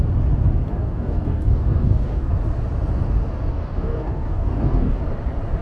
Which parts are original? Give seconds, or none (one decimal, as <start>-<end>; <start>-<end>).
0.0-0.7; 2.3-3.5; 5.0-5.6